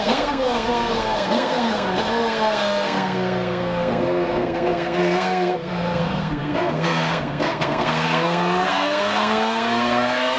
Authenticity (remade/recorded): remade